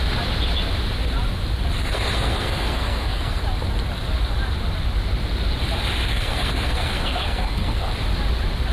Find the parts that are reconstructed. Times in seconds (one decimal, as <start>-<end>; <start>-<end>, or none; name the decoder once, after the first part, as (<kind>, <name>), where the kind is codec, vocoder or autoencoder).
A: 1.8-3.4 (codec, SNAC); 6.1-7.9